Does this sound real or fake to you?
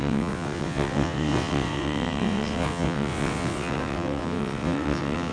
fake